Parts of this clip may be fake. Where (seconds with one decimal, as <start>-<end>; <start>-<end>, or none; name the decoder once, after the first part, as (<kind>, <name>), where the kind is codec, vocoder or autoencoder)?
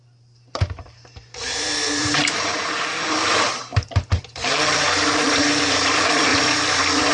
0.0-6.3 (vocoder, BigVGAN v2)